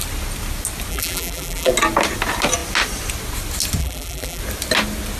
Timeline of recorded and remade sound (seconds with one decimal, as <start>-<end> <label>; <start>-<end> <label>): 0.0-0.9 recorded; 0.9-1.7 remade; 1.7-3.8 recorded; 3.8-4.4 remade; 4.4-5.2 recorded